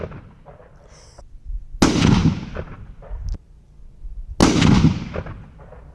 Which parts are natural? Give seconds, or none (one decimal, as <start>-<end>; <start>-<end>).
0.0-5.9